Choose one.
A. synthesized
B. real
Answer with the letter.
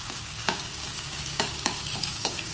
A